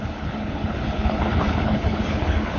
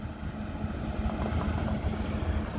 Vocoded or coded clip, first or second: first